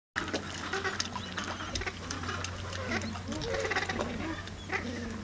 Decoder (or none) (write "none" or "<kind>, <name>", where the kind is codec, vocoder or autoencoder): none